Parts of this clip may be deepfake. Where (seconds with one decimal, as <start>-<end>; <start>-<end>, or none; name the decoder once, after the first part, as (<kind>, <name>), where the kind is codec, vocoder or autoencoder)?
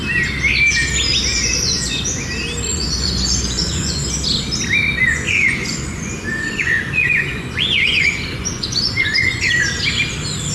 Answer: 1.3-2.3 (vocoder, Vocos); 2.7-4.1; 5.1-9.5